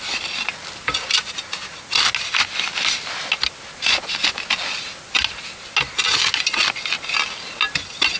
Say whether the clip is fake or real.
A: real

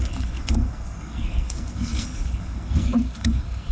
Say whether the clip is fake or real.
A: fake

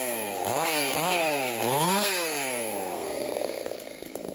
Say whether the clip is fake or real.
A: fake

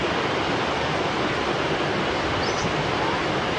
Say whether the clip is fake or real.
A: real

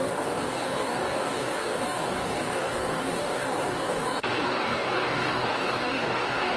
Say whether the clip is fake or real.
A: fake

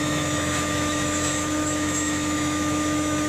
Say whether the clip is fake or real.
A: fake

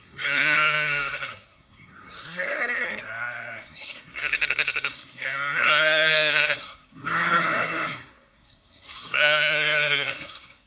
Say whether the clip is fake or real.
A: fake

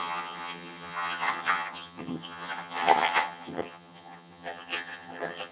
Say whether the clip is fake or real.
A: fake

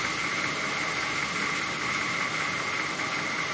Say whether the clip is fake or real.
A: real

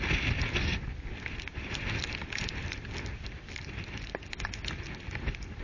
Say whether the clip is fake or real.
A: real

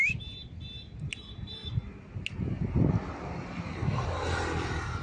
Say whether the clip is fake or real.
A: real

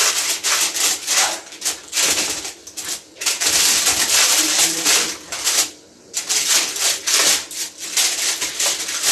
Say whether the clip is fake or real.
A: real